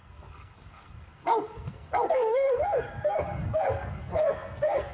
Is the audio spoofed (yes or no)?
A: yes